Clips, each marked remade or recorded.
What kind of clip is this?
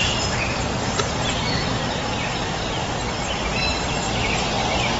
remade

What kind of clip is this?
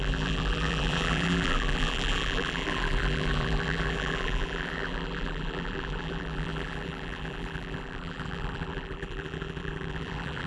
remade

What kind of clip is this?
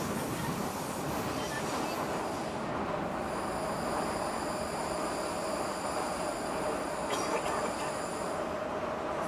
recorded